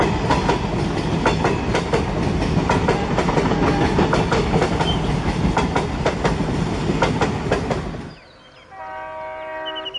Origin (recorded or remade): recorded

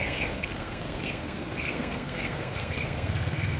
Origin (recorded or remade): remade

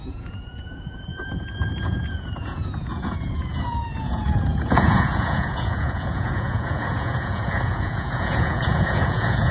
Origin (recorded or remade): remade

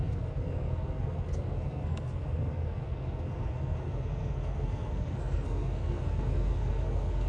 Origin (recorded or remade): remade